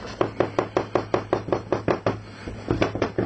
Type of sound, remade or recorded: recorded